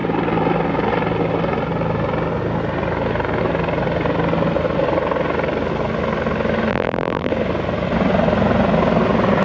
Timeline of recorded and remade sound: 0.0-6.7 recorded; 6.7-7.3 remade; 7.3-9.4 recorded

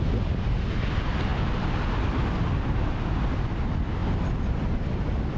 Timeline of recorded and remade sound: 0.0-5.4 recorded

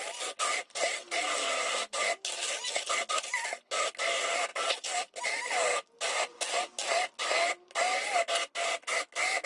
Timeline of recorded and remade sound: 0.0-9.5 recorded

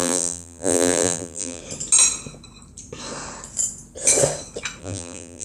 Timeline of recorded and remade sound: 0.0-1.6 remade; 1.6-4.8 recorded; 4.8-5.4 remade